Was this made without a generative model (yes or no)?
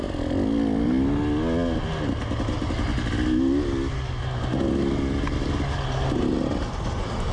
yes